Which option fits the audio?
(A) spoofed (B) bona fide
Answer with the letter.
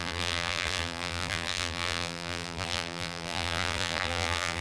A